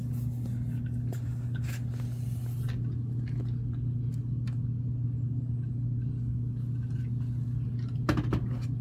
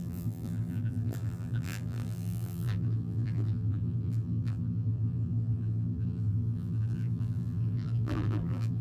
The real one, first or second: first